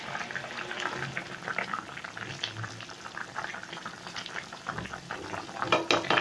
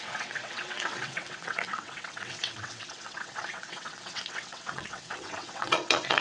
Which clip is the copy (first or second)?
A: second